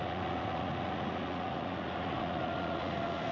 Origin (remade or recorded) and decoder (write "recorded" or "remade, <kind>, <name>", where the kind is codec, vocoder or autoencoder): remade, vocoder, Vocos